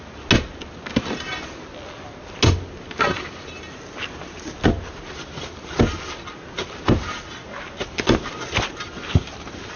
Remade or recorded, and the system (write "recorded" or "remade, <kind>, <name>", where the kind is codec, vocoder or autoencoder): recorded